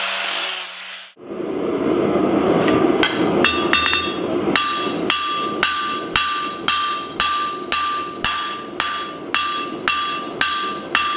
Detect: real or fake real